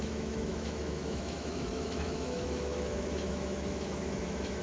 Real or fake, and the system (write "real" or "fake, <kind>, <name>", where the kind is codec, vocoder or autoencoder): fake, autoencoder, DAC-VAE